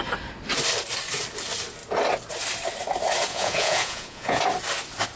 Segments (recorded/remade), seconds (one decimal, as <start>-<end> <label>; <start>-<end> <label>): 0.0-3.3 recorded; 3.3-4.4 remade; 4.4-5.2 recorded